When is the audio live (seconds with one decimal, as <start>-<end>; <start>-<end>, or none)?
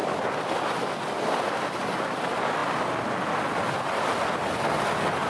0.0-5.3